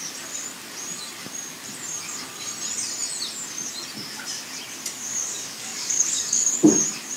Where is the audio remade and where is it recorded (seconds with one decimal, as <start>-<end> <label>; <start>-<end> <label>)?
0.0-5.1 recorded; 5.1-6.7 remade; 6.7-7.2 recorded